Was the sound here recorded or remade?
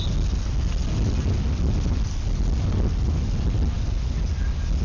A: recorded